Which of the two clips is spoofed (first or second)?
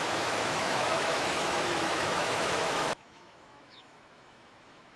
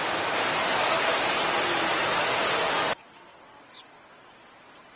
first